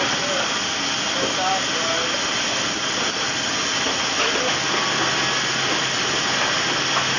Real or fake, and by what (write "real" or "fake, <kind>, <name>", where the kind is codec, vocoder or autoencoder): real